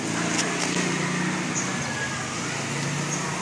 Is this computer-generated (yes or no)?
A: no